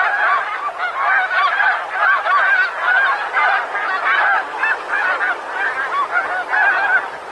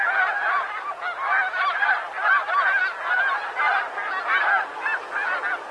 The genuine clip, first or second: second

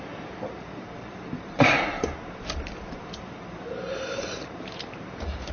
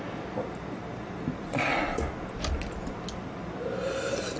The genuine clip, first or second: second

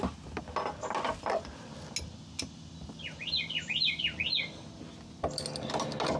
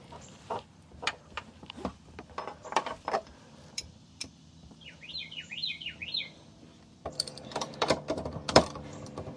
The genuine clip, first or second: first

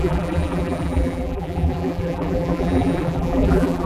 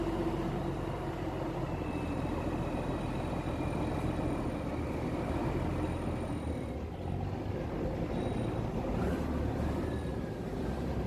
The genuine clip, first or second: second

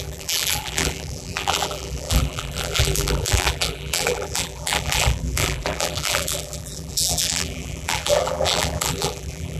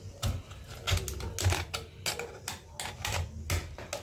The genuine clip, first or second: second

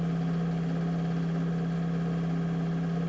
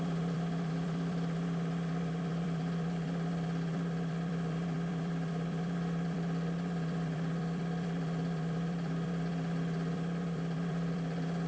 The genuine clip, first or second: first